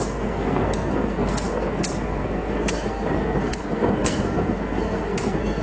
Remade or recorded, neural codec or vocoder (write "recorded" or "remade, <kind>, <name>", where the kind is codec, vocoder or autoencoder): remade, codec, SNAC